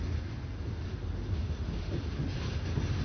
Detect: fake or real real